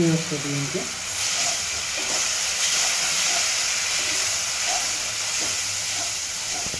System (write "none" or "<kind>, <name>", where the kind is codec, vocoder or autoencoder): none